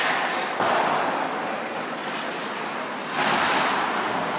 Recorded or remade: recorded